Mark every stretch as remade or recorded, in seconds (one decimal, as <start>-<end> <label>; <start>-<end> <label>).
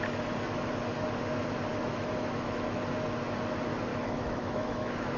0.0-1.7 recorded; 1.7-2.8 remade; 2.8-3.9 recorded; 3.9-5.2 remade